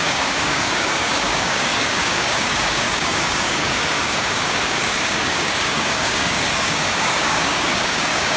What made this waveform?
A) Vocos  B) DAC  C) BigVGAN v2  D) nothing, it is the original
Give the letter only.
B